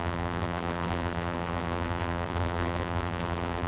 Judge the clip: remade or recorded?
remade